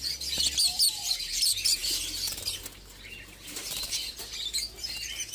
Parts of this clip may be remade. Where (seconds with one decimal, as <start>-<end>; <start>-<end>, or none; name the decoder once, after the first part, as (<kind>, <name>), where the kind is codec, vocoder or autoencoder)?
none